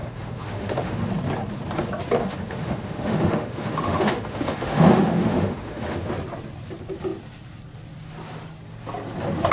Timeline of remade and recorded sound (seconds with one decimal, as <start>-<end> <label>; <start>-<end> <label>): 0.0-1.1 remade; 1.1-2.2 recorded; 2.2-6.1 remade; 6.1-9.5 recorded